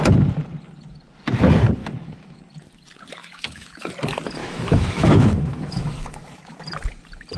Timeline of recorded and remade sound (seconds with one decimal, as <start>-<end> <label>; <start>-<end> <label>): 0.0-1.8 recorded; 1.8-2.4 remade; 2.4-3.2 recorded; 3.2-3.9 remade; 3.9-4.4 recorded; 4.4-6.6 remade; 6.6-7.4 recorded

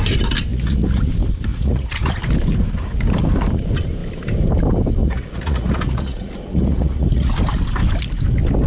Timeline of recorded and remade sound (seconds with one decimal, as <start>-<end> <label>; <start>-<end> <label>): 0.0-0.5 recorded; 0.5-1.1 remade; 1.1-1.5 recorded; 1.5-2.2 remade; 2.2-5.0 recorded; 5.0-7.3 remade; 7.3-8.7 recorded